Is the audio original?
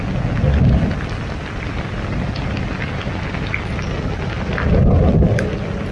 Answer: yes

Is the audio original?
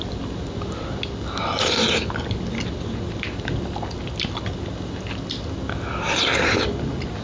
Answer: yes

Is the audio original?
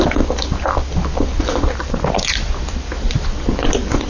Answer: yes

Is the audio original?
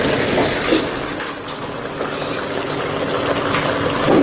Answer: yes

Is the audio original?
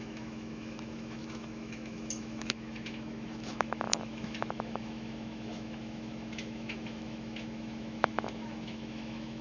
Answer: no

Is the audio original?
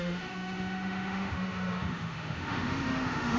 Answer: no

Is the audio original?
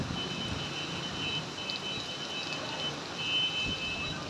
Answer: yes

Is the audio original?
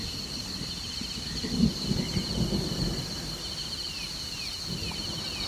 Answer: yes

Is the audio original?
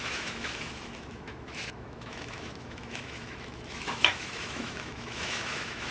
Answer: no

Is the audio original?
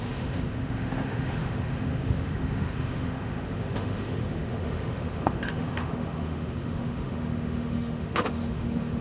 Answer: no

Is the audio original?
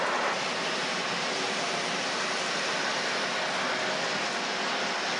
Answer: yes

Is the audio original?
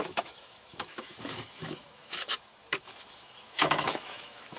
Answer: no